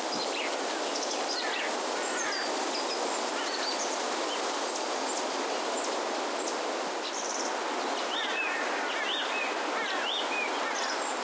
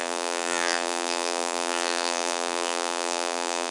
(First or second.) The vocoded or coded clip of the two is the second